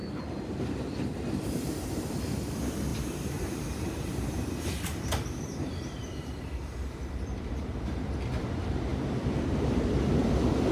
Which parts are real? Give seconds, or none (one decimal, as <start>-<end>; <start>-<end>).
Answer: 1.7-2.9; 8.1-8.9; 9.8-10.7